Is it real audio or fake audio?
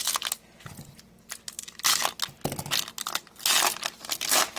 real